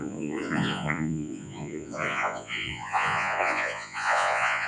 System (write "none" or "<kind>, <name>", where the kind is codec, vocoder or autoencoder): vocoder, Vocos